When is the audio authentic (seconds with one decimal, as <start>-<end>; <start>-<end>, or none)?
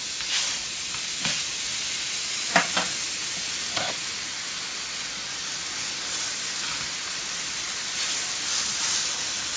0.0-9.6